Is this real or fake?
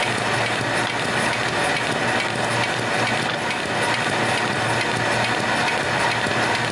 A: real